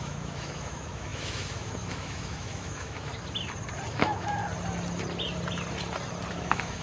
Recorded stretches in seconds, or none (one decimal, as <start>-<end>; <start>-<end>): 3.1-3.9; 4.4-6.3